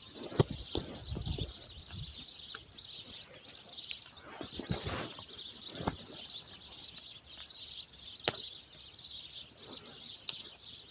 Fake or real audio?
real